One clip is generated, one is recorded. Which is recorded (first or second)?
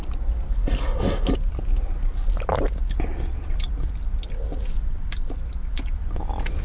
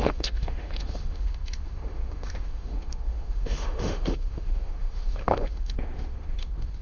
first